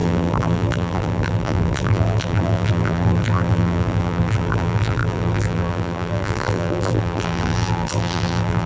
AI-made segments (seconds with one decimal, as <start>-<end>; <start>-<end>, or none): 0.0-8.7